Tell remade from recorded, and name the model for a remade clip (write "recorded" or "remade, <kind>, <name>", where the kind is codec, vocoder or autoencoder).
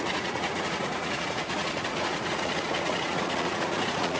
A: remade, vocoder, Vocos